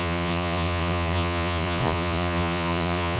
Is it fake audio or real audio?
fake